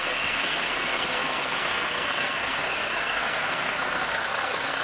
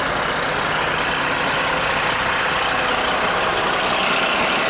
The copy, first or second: first